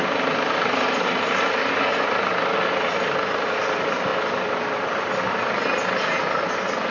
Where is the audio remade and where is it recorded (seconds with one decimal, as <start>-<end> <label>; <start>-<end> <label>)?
0.0-6.9 recorded